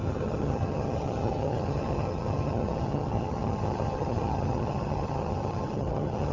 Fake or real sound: fake